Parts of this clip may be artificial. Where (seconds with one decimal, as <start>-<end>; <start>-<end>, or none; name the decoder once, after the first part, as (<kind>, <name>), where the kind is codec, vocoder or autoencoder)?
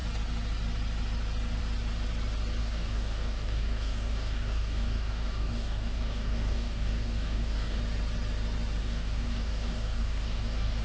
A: 2.6-7.8 (codec, DAC); 8.8-10.8